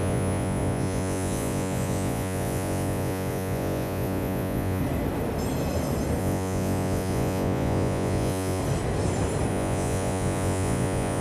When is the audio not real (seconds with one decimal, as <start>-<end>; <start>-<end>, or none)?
0.0-4.8; 6.2-8.6; 9.5-11.2